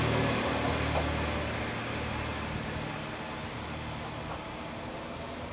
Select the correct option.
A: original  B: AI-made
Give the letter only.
A